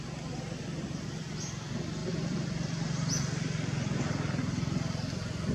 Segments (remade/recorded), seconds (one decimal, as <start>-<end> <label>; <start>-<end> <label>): 0.0-5.5 recorded